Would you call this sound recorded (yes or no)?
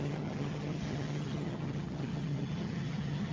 no